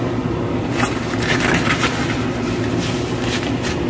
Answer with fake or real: real